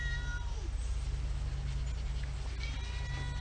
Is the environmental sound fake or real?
real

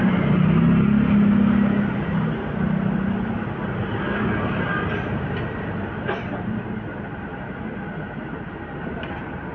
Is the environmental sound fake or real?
real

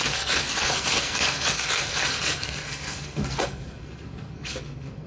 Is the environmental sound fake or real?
fake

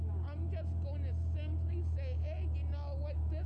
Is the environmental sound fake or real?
real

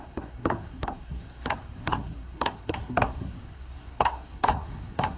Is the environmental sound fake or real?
fake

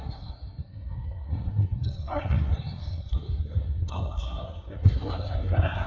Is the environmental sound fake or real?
fake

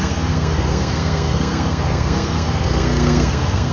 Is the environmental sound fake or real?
fake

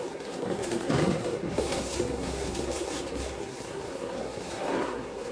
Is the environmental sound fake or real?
fake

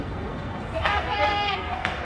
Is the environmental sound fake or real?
fake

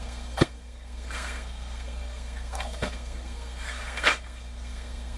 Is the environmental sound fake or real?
fake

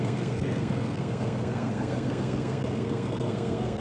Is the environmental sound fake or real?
fake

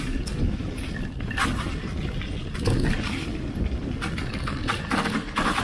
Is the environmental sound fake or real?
real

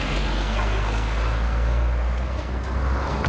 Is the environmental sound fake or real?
fake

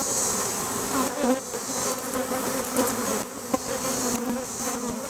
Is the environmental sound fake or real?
real